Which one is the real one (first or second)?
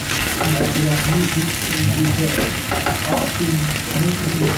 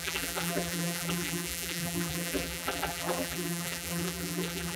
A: first